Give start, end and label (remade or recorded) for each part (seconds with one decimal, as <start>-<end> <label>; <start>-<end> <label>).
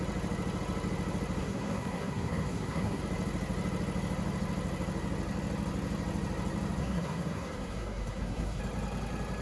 0.0-1.4 recorded; 1.4-3.0 remade; 3.0-6.8 recorded; 6.8-8.6 remade; 8.6-9.4 recorded